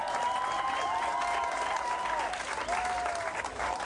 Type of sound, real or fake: real